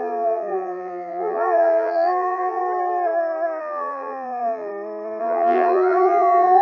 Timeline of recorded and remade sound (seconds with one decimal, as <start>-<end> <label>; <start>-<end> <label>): 0.0-2.6 remade; 2.6-3.6 recorded; 3.6-4.7 remade; 4.7-5.2 recorded; 5.2-6.6 remade